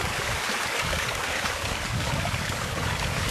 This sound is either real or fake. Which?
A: fake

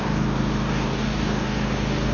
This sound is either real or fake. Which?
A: fake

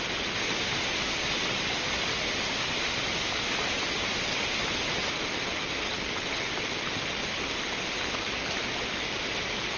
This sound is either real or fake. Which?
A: real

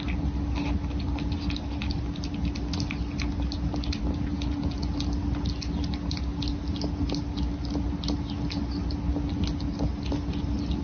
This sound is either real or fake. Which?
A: real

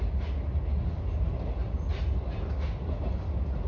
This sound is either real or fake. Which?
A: real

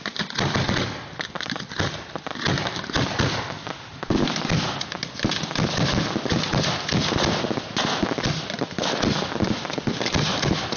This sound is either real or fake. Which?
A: real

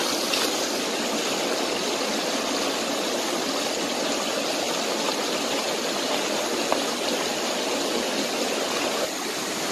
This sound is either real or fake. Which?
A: real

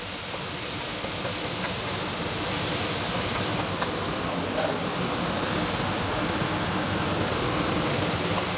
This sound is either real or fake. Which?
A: real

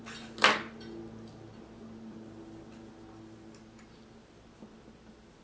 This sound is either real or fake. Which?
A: real